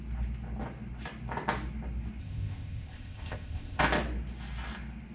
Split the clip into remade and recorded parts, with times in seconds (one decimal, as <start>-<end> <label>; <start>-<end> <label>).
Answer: 0.0-2.2 recorded; 2.2-3.8 remade; 3.8-5.1 recorded